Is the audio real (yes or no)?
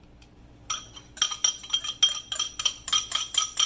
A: yes